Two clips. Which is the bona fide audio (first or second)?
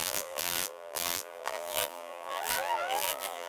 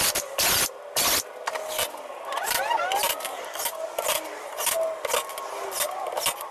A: second